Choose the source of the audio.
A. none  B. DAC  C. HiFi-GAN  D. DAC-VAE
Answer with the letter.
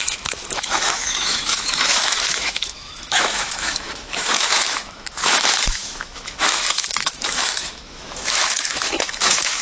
D